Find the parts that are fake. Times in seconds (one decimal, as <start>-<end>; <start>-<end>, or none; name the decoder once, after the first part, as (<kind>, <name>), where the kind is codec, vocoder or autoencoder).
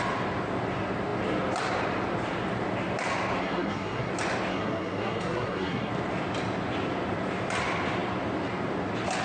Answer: 3.4-4.1 (codec, SNAC); 4.5-5.9